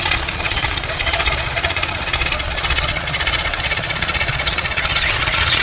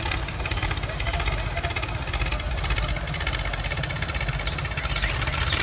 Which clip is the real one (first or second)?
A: second